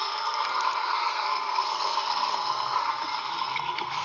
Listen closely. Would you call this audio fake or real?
fake